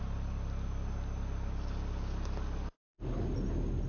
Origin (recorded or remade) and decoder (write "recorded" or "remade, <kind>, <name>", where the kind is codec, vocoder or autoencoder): recorded